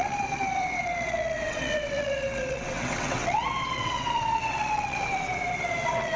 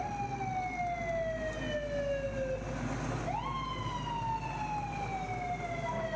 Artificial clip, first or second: first